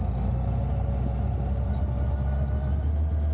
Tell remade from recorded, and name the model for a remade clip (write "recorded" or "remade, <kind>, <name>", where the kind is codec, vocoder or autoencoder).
recorded